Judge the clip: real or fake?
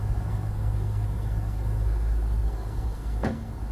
fake